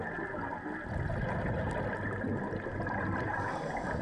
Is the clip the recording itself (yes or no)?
yes